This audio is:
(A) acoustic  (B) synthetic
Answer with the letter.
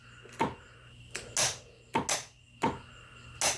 A